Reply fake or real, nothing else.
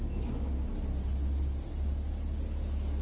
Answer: real